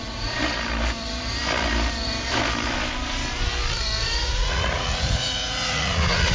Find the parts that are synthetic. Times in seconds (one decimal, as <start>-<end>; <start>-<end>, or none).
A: 0.0-0.4; 4.2-6.3